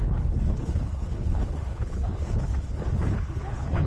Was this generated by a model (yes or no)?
yes